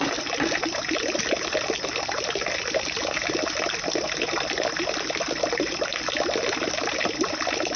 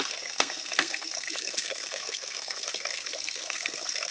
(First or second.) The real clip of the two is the first